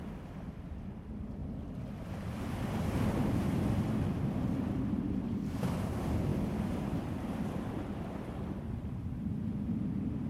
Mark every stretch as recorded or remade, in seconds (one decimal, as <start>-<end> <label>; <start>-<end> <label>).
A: 0.0-1.4 recorded; 1.4-5.4 remade; 5.4-6.3 recorded; 6.3-8.8 remade; 8.8-10.3 recorded